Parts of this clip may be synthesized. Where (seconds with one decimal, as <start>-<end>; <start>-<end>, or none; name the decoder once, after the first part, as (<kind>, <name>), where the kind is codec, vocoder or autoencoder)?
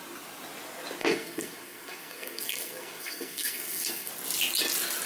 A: 1.0-4.1 (codec, SNAC)